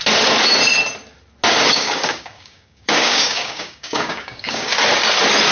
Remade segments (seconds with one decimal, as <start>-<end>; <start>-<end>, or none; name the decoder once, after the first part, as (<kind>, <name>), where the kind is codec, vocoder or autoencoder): 1.7-4.7 (codec, DAC)